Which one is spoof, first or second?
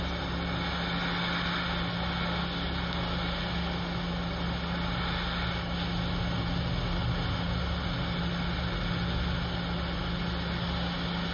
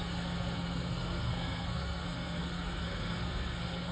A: second